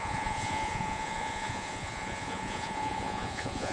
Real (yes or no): no